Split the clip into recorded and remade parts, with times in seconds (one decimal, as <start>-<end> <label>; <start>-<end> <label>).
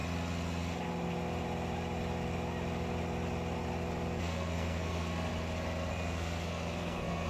0.0-4.2 recorded; 4.2-5.3 remade; 5.3-5.9 recorded; 5.9-7.3 remade